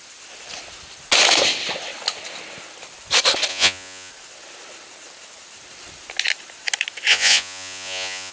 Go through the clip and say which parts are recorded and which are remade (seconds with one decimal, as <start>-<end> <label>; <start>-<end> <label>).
0.0-3.5 recorded; 3.5-4.1 remade; 4.1-7.1 recorded; 7.1-8.3 remade